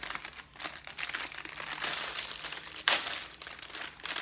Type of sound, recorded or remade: recorded